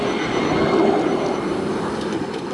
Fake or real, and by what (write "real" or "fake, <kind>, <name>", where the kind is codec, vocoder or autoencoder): real